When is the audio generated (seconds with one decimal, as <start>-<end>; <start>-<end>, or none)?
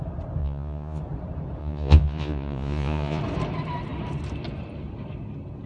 0.4-1.0; 1.6-3.2